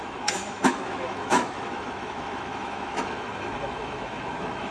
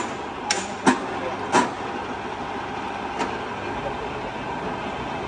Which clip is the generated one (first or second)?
first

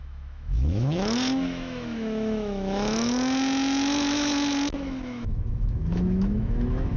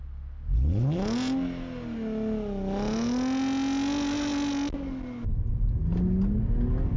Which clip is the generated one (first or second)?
first